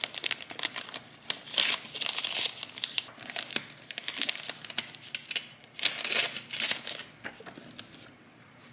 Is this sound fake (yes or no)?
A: no